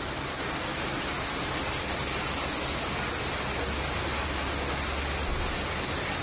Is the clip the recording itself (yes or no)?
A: yes